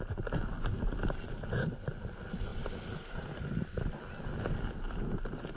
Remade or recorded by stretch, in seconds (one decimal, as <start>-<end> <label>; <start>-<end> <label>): 0.0-5.6 recorded